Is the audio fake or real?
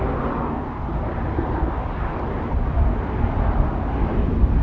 real